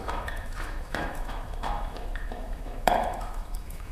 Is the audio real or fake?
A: fake